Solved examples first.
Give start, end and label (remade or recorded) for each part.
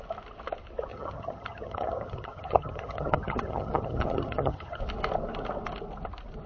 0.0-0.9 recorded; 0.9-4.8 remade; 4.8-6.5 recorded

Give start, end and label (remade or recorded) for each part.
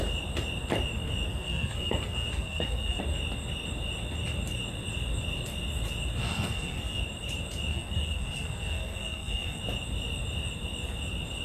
0.0-1.3 recorded; 1.3-3.0 remade; 3.0-6.2 recorded; 6.2-7.0 remade; 7.0-7.7 recorded; 7.7-9.6 remade; 9.6-11.4 recorded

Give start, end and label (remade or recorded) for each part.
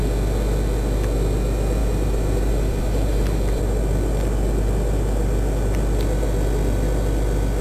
0.0-1.8 recorded; 1.8-3.6 remade; 3.6-7.6 recorded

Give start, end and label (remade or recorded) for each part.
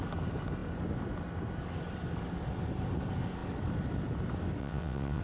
0.0-4.6 recorded; 4.6-5.2 remade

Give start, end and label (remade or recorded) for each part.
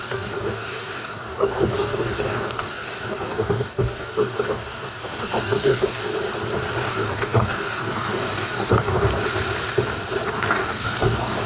0.0-6.1 remade; 6.1-6.8 recorded; 6.8-9.1 remade; 9.1-10.5 recorded; 10.5-11.5 remade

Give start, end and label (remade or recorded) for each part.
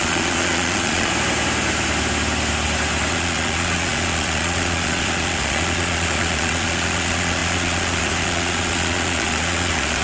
0.0-1.1 remade; 1.1-3.1 recorded; 3.1-10.0 remade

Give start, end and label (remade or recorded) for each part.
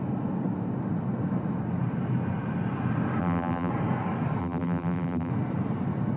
0.0-3.2 recorded; 3.2-3.7 remade; 3.7-4.4 recorded; 4.4-5.3 remade; 5.3-6.2 recorded